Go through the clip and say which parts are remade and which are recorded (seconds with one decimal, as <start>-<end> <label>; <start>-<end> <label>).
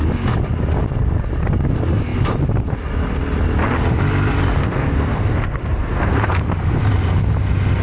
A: 0.0-4.6 recorded; 4.6-6.4 remade; 6.4-7.8 recorded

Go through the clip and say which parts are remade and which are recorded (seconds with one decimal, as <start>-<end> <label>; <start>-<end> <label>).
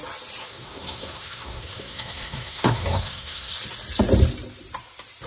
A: 0.0-0.4 recorded; 0.4-3.6 remade; 3.6-5.3 recorded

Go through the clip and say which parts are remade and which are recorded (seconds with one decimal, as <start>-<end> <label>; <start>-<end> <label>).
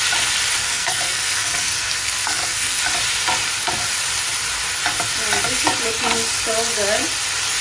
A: 0.0-0.6 recorded; 0.6-2.8 remade; 2.8-7.6 recorded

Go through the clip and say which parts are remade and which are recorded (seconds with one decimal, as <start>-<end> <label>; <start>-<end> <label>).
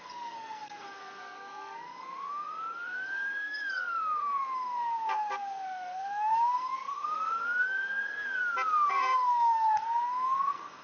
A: 0.0-8.4 remade; 8.4-8.9 recorded; 8.9-10.8 remade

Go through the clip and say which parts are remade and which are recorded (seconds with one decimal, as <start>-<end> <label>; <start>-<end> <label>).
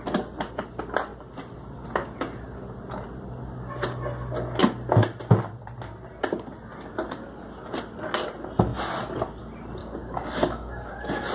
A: 0.0-9.8 recorded; 9.8-10.9 remade; 10.9-11.3 recorded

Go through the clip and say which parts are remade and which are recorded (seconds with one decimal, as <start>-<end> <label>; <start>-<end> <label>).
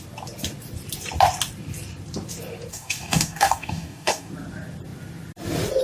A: 0.0-2.7 recorded; 2.7-4.3 remade; 4.3-5.8 recorded